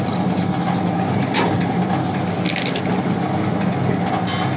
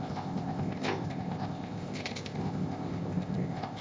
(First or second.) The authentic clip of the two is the first